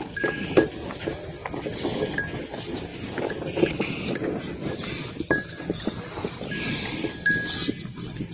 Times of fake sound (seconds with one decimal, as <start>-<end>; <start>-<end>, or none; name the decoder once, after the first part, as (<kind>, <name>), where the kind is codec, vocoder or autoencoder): none